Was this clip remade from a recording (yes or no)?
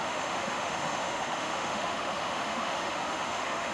yes